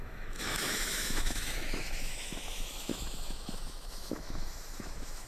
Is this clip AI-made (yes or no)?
yes